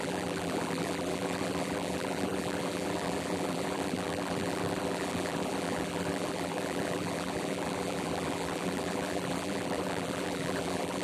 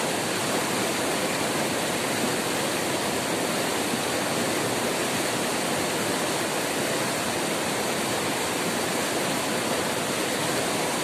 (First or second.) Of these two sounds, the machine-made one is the first